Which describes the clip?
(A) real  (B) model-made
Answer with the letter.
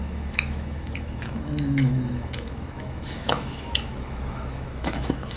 B